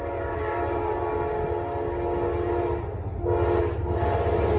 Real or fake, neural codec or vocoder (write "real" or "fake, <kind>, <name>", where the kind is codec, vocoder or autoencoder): real